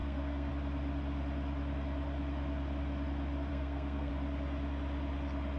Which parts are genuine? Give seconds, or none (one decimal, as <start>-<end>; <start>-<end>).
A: 0.5-3.5; 4.1-5.6